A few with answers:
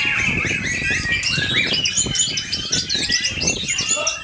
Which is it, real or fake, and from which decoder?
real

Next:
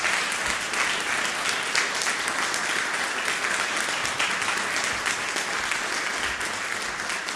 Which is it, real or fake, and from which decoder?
real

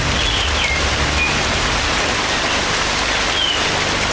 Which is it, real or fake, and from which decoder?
real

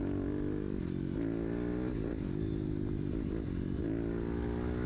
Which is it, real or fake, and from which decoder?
real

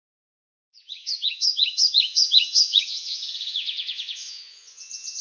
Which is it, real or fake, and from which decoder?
fake, vocoder, Vocos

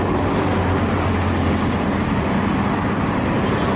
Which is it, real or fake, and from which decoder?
real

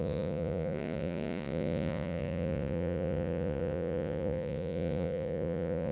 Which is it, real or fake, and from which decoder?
fake, vocoder, Vocos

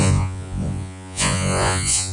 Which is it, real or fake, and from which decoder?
fake, vocoder, Vocos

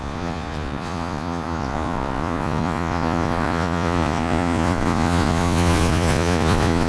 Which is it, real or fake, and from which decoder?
fake, vocoder, Vocos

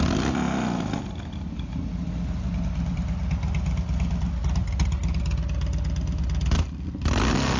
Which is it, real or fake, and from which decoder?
real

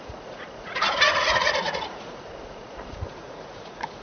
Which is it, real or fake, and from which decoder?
fake, vocoder, Vocos